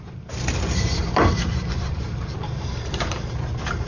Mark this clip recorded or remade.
remade